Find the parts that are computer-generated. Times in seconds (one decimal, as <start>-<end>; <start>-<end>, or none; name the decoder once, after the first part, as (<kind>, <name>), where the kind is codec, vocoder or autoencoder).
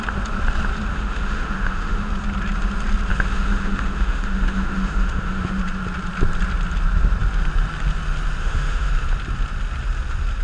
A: 0.9-2.1 (autoencoder, DAC-VAE); 3.1-5.6; 8.4-8.9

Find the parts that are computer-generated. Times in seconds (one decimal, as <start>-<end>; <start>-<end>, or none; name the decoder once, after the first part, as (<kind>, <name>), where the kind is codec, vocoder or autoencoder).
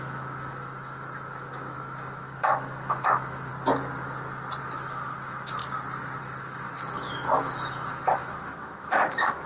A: 0.0-3.5 (autoencoder, DAC-VAE); 4.6-5.6; 6.2-9.5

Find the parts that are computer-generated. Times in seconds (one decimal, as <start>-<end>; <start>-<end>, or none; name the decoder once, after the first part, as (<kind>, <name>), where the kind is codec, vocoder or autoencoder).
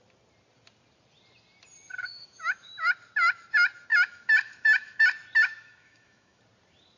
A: 2.0-2.7 (autoencoder, DAC-VAE); 3.9-5.0; 5.4-6.4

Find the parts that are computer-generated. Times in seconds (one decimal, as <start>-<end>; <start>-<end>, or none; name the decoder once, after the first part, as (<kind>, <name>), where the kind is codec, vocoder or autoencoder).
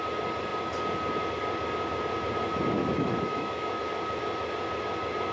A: 2.8-3.8 (autoencoder, DAC-VAE)